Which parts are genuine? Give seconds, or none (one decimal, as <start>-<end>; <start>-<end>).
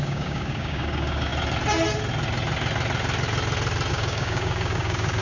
1.3-3.9